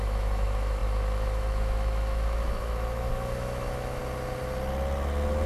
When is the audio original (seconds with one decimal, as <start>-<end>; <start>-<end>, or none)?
4.0-5.5